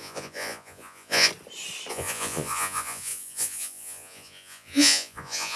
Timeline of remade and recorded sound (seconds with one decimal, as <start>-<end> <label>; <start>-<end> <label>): 0.0-1.3 remade; 1.3-1.9 recorded; 1.9-5.6 remade